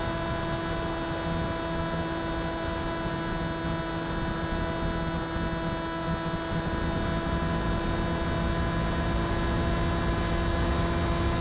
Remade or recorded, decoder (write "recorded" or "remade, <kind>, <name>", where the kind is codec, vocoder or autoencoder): recorded